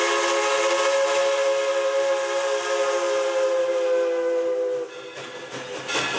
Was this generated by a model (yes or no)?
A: no